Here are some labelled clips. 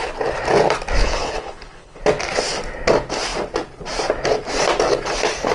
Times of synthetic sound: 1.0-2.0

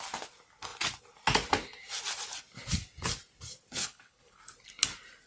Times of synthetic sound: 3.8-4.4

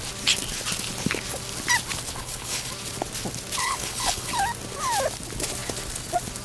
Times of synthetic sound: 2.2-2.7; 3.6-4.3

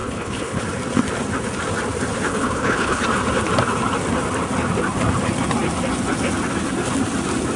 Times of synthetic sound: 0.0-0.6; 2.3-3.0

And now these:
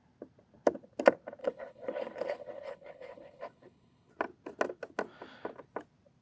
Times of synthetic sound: 1.4-4.1

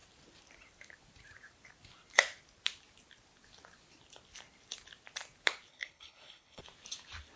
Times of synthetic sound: 5.7-6.6

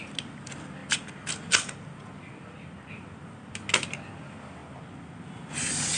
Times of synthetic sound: none

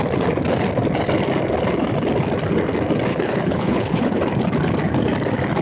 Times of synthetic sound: 3.1-4.2